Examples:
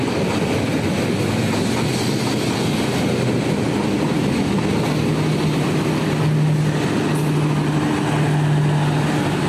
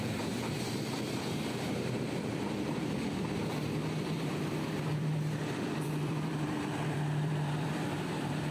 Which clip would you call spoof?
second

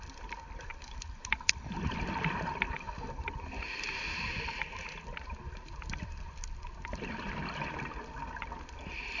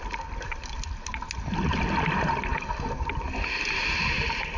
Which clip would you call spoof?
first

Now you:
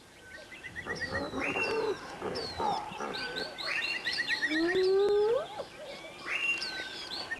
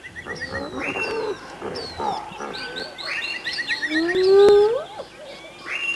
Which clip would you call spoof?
first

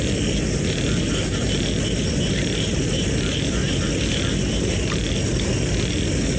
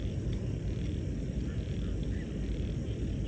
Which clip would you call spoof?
second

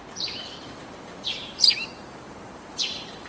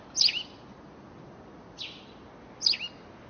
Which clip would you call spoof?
first